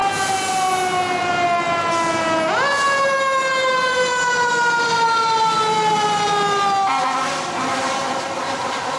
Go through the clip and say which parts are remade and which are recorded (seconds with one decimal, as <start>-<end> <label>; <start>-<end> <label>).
0.0-9.0 recorded